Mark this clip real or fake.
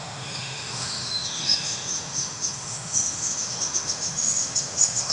fake